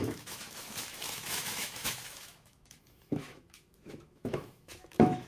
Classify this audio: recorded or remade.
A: remade